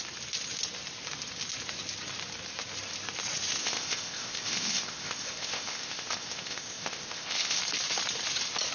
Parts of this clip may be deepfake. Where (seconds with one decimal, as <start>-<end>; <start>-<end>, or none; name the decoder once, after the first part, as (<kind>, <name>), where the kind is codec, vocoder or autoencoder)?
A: 3.6-7.6 (codec, ZipCodec)